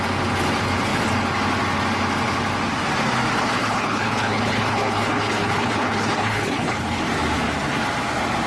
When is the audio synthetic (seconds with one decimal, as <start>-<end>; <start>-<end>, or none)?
3.4-7.0